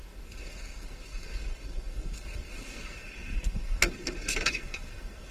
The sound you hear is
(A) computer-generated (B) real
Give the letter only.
A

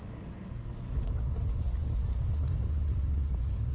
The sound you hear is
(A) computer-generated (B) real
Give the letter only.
B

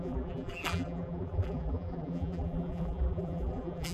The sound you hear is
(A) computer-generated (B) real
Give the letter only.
A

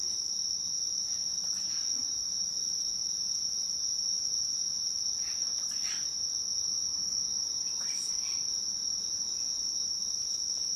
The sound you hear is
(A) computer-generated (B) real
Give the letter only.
B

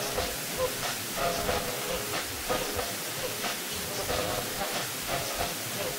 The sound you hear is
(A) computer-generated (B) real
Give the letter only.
B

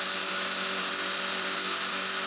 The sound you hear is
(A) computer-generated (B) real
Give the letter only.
B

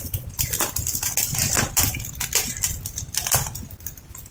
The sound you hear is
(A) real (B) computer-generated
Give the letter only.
A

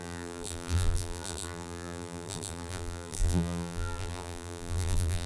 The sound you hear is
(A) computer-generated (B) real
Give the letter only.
A